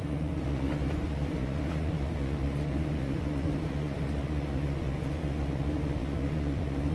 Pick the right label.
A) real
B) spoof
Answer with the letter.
B